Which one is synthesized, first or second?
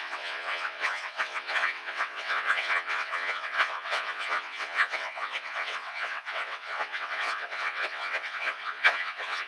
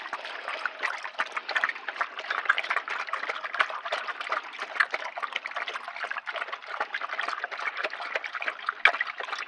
first